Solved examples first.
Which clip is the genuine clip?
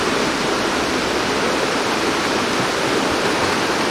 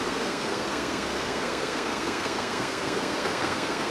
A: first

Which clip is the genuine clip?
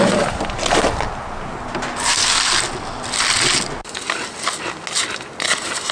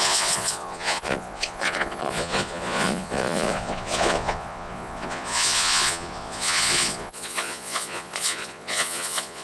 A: first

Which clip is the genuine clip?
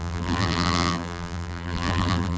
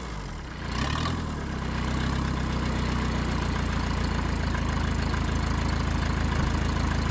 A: second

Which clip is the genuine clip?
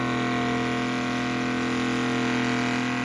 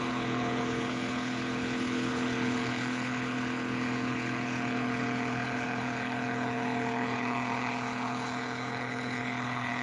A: first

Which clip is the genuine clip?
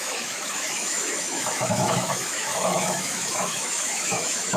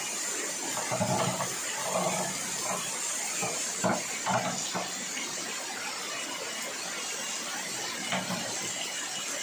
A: second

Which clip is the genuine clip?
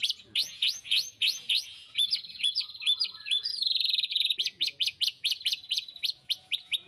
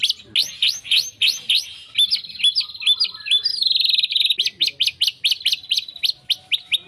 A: second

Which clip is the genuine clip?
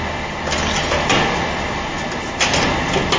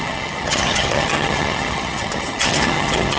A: first